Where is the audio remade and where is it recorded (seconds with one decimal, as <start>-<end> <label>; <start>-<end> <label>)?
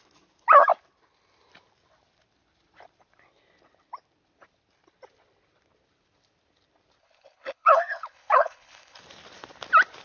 0.0-7.0 recorded; 7.0-9.0 remade; 9.0-10.0 recorded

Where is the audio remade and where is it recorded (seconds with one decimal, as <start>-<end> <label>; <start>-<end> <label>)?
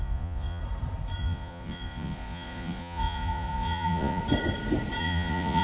0.0-0.6 remade; 0.6-1.2 recorded; 1.2-4.2 remade; 4.2-5.0 recorded; 5.0-5.6 remade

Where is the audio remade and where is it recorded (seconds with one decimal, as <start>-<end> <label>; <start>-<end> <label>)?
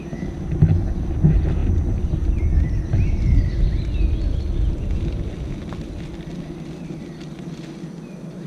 0.0-8.5 recorded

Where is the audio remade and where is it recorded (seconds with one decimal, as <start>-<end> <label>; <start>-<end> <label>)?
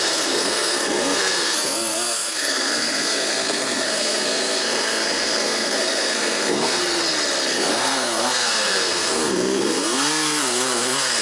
0.0-6.8 remade; 6.8-7.5 recorded; 7.5-11.2 remade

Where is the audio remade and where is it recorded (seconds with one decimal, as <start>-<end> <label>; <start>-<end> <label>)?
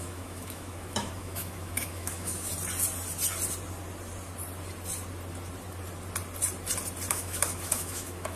0.0-2.5 remade; 2.5-7.1 recorded; 7.1-8.4 remade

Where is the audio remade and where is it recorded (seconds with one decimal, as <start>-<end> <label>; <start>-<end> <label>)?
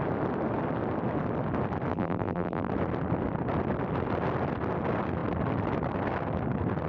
0.0-1.9 recorded; 1.9-2.7 remade; 2.7-6.9 recorded